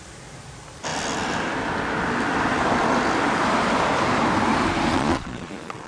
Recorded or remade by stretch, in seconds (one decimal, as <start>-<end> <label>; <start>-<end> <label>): 0.0-4.9 recorded; 4.9-5.9 remade

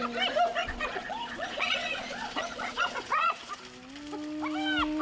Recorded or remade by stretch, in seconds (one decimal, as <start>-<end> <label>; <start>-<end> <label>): 0.0-0.6 recorded; 0.6-3.6 remade; 3.6-5.0 recorded

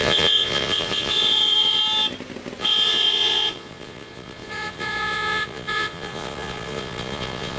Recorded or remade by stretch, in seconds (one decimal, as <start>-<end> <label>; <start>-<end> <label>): 0.0-1.8 remade; 1.8-2.6 recorded; 2.6-7.6 remade